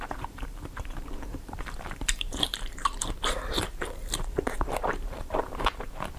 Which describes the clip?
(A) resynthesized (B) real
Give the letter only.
A